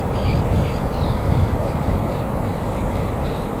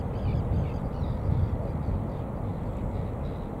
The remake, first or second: first